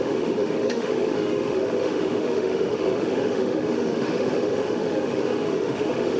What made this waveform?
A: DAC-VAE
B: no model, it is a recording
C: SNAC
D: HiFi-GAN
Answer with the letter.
A